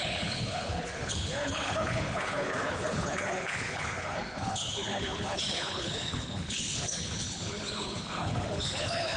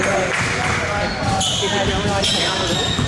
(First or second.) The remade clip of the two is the first